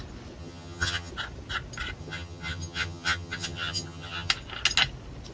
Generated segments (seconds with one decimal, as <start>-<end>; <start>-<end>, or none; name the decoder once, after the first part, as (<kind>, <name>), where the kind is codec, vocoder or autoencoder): 0.4-1.1 (vocoder, HiFi-GAN); 2.0-4.3